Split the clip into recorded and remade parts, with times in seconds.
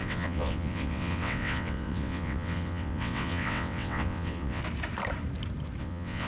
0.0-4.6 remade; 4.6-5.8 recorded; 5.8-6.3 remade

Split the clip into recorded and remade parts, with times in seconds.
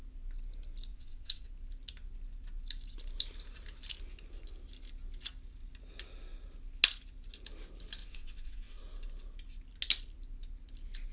0.0-0.9 recorded; 0.9-1.5 remade; 1.5-8.0 recorded; 8.0-8.8 remade; 8.8-11.1 recorded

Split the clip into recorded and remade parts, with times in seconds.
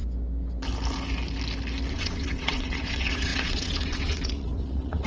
0.0-1.9 recorded; 1.9-5.1 remade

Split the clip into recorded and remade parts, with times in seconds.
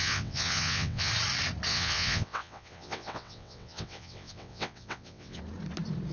0.0-1.1 remade; 1.1-1.7 recorded; 1.7-5.4 remade; 5.4-6.1 recorded